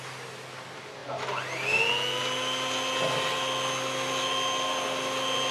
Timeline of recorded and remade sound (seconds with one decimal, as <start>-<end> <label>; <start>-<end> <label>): 0.0-5.5 recorded